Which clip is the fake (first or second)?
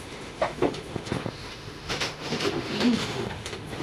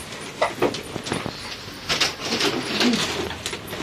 first